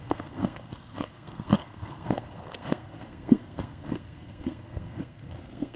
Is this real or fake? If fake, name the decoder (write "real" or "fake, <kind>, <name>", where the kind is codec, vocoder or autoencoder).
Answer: fake, codec, SNAC